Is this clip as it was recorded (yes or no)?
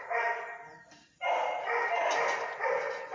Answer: yes